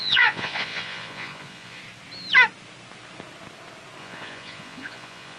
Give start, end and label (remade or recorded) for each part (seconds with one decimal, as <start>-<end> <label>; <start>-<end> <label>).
0.0-1.8 remade; 1.8-4.0 recorded; 4.0-5.4 remade